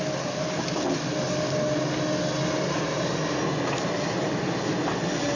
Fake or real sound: real